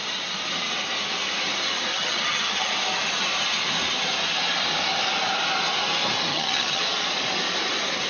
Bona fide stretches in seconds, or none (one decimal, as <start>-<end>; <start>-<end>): 0.0-1.9; 2.7-6.3; 6.8-8.1